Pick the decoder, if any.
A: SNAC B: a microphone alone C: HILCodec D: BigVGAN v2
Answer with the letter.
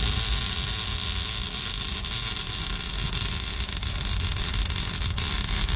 B